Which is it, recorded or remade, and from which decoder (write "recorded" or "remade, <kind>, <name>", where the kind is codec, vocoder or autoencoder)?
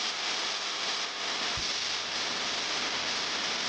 recorded